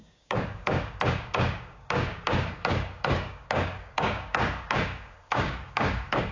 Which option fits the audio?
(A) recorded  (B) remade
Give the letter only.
B